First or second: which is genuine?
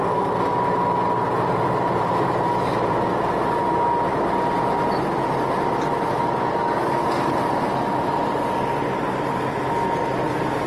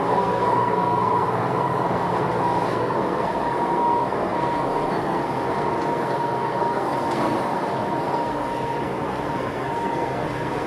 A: first